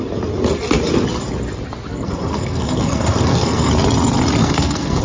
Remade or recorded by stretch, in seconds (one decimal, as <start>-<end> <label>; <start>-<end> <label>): 0.0-1.9 recorded; 1.9-3.7 remade; 3.7-4.4 recorded; 4.4-5.0 remade